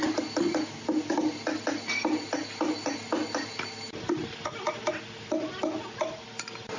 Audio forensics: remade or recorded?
recorded